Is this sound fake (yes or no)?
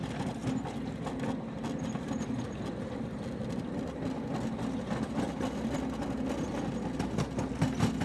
no